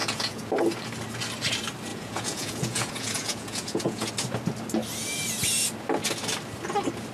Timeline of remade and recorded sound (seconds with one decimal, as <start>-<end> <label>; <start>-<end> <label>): 0.0-0.5 remade; 0.5-1.9 recorded; 1.9-4.1 remade; 4.1-7.1 recorded